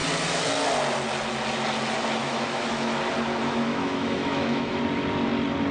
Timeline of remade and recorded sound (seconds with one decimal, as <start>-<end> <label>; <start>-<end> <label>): 0.0-2.2 recorded; 2.2-3.0 remade; 3.0-3.4 recorded; 3.4-4.8 remade; 4.8-5.7 recorded